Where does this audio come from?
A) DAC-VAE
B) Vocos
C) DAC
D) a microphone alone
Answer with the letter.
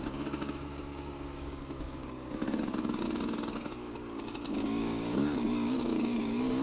C